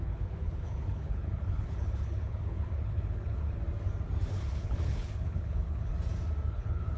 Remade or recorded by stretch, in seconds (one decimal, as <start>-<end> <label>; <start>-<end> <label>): 0.0-3.6 remade; 3.6-4.3 recorded; 4.3-5.9 remade; 5.9-6.5 recorded; 6.5-7.0 remade